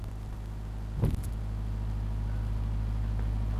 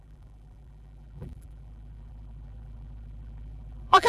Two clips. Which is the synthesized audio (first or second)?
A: second